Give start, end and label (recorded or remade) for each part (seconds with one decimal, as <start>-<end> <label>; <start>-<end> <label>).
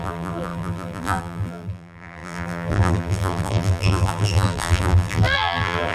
0.0-5.9 remade